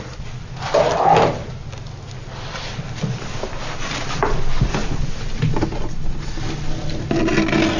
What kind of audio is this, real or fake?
real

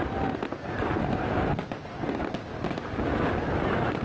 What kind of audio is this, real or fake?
real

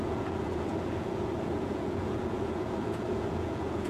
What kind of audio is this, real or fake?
fake